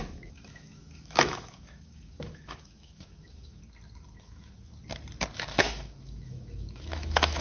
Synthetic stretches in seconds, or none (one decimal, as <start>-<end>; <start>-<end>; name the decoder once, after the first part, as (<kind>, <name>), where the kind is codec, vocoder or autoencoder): 0.0-3.6 (autoencoder, DAC-VAE); 4.2-4.7; 5.4-7.4